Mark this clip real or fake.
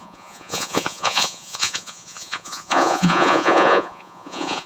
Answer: fake